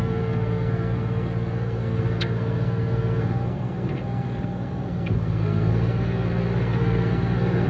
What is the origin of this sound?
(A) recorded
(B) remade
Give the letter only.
B